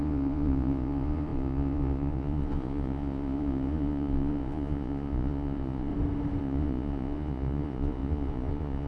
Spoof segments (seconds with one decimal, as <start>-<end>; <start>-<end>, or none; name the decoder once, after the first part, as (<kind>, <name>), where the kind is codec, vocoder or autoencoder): 0.0-5.9 (vocoder, Vocos); 6.4-8.9